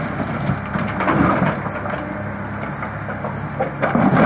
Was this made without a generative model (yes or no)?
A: yes